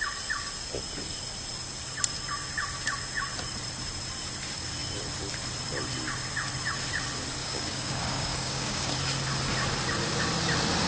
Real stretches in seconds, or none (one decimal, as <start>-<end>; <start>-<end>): 0.0-7.4; 8.9-10.9